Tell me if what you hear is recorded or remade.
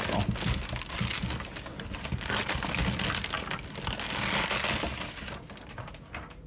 recorded